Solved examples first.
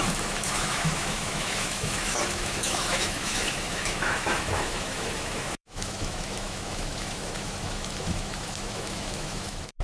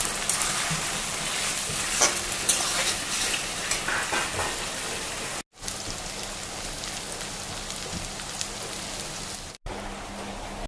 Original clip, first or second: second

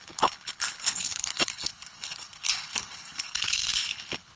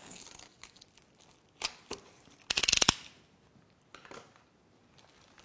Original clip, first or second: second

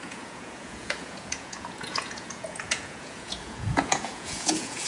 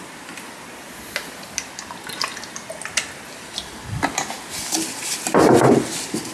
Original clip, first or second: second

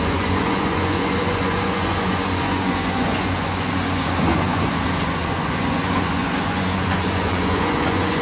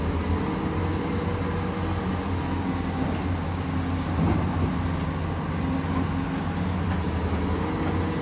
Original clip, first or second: second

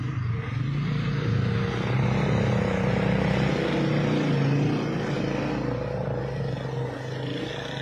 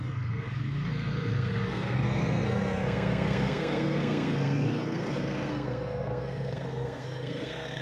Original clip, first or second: first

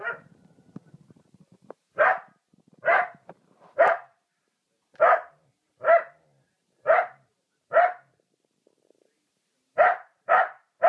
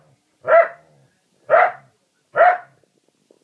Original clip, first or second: second